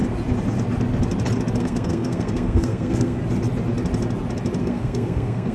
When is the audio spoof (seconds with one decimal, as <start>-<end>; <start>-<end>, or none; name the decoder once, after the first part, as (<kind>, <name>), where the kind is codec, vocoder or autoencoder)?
1.6-3.2 (codec, SNAC); 4.6-5.5